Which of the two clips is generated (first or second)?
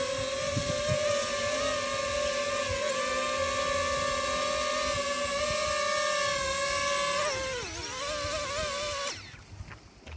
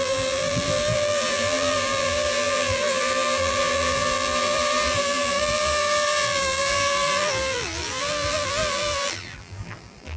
second